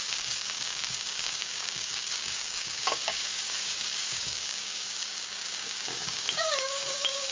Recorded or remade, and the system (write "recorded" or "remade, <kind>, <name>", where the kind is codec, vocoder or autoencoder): remade, codec, DAC